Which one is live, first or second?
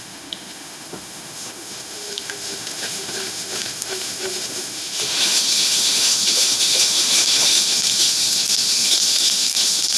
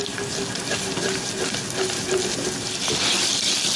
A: second